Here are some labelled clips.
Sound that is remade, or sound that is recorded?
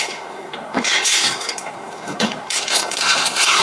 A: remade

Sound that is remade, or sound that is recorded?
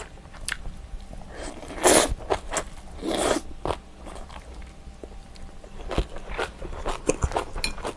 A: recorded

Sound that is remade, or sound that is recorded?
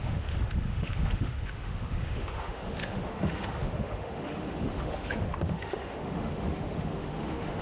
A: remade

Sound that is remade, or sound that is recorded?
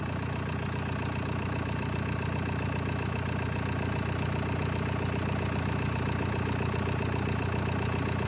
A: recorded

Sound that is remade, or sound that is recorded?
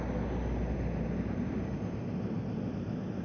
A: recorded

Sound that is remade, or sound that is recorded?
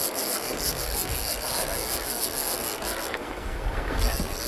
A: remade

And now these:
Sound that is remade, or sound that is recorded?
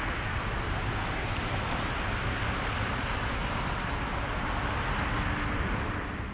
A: recorded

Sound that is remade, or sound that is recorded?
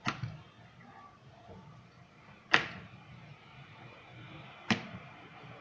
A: remade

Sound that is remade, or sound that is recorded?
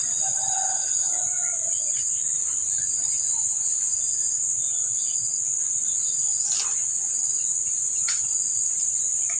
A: recorded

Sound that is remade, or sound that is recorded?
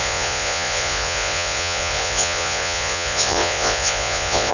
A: remade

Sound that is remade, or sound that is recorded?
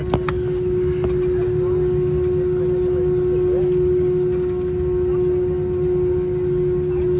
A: recorded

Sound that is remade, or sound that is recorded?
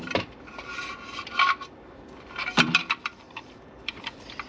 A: remade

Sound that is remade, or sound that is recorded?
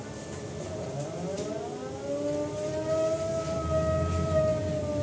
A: recorded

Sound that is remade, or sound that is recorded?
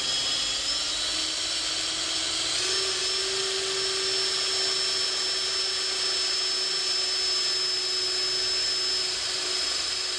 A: recorded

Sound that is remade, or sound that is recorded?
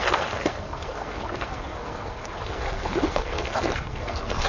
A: remade